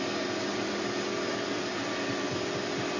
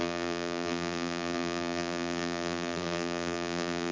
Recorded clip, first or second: first